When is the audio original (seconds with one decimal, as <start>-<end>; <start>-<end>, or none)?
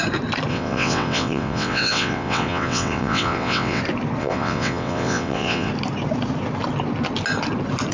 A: 0.0-0.5; 3.8-4.2; 5.7-7.9